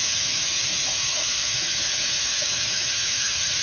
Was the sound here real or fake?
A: fake